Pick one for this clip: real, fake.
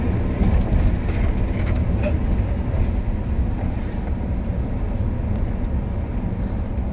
real